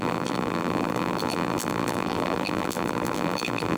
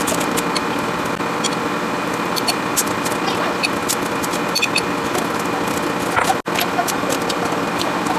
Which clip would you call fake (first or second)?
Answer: first